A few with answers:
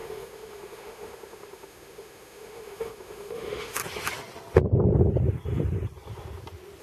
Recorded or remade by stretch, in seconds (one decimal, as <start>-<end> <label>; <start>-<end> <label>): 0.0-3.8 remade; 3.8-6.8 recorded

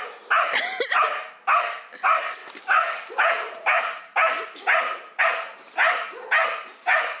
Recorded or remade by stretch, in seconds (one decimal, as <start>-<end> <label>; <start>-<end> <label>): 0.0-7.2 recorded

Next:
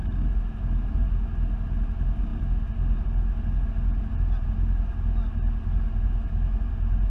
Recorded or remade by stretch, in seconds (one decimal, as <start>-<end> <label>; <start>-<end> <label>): 0.0-7.1 recorded

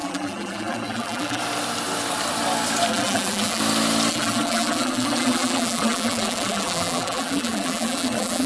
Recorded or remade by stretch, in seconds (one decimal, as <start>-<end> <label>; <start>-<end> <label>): 0.0-1.4 remade; 1.4-2.9 recorded; 2.9-3.6 remade; 3.6-4.1 recorded; 4.1-8.5 remade